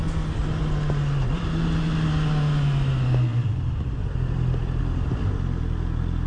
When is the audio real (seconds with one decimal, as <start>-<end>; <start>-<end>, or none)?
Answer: 0.0-3.3; 4.8-6.3